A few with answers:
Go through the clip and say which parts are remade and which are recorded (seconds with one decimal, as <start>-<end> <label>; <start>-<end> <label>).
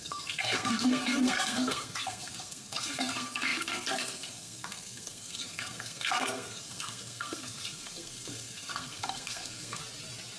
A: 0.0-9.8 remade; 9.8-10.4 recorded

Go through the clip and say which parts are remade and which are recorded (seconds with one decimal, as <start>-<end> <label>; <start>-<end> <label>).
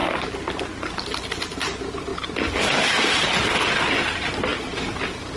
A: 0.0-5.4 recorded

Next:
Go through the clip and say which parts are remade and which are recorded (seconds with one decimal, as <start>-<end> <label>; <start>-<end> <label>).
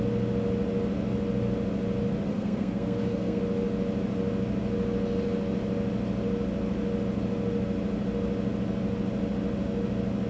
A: 0.0-2.3 recorded; 2.3-3.4 remade; 3.4-10.3 recorded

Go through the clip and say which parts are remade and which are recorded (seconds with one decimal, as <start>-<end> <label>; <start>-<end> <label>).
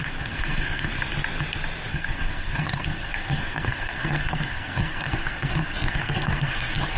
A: 0.0-0.9 remade; 0.9-1.9 recorded; 1.9-7.0 remade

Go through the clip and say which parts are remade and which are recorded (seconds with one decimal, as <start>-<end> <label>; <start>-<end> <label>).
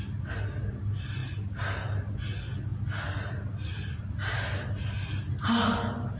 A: 0.0-1.2 recorded; 1.2-2.1 remade; 2.1-6.2 recorded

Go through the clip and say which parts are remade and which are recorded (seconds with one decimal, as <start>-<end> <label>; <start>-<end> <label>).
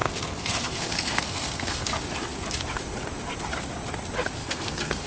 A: 0.0-1.9 remade; 1.9-4.4 recorded; 4.4-5.1 remade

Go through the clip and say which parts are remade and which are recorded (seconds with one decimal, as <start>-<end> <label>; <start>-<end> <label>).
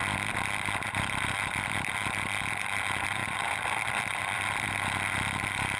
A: 0.0-0.5 recorded; 0.5-5.8 remade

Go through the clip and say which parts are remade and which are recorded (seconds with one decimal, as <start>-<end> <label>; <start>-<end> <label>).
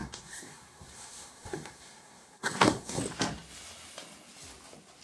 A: 0.0-3.0 remade; 3.0-5.0 recorded